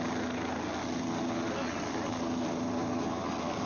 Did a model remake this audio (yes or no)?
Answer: no